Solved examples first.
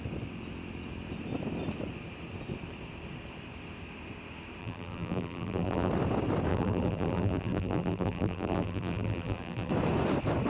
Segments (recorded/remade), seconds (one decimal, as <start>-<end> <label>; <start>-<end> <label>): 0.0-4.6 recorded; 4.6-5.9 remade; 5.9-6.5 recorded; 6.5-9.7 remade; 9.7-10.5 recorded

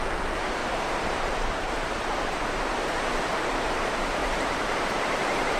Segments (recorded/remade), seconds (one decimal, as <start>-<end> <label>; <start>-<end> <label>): 0.0-0.6 recorded; 0.6-2.6 remade; 2.6-4.2 recorded; 4.2-5.6 remade

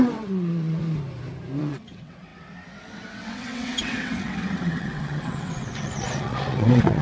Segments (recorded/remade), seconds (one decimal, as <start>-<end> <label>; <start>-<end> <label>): 0.0-0.8 remade; 0.8-1.6 recorded; 1.6-7.0 remade

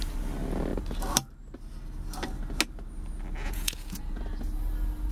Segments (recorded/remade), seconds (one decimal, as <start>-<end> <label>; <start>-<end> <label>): 0.0-3.4 recorded; 3.4-4.2 remade; 4.2-5.1 recorded

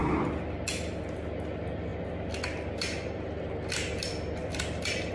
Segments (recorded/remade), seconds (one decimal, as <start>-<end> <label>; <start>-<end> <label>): 0.0-5.1 recorded

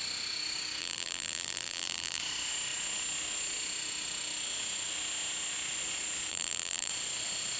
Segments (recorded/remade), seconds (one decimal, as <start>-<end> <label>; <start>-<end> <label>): 0.0-0.8 recorded; 0.8-2.2 remade; 2.2-6.3 recorded; 6.3-6.9 remade; 6.9-7.6 recorded

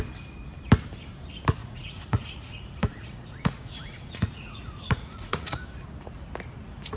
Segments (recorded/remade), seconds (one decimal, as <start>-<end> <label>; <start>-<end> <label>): 0.0-1.6 recorded; 1.6-5.6 remade; 5.6-7.0 recorded